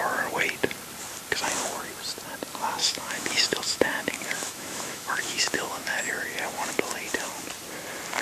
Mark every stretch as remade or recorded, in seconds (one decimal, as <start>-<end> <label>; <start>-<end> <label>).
0.0-2.8 recorded; 2.8-6.1 remade; 6.1-8.2 recorded